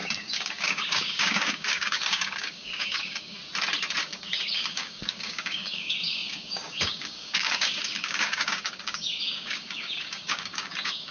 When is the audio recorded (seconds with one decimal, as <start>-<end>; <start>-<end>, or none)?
3.4-4.0